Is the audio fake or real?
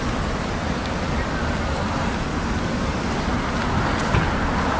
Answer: real